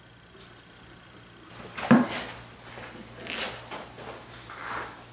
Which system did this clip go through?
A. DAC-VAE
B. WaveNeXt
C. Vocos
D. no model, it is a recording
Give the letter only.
D